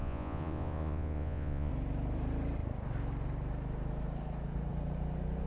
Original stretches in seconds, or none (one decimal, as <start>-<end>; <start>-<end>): 1.7-5.5